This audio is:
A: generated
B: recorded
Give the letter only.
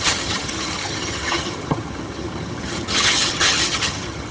A